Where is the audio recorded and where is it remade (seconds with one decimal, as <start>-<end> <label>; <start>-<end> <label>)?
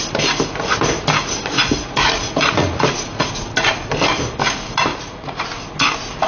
0.0-1.4 recorded; 1.4-3.3 remade; 3.3-4.9 recorded; 4.9-5.5 remade; 5.5-6.3 recorded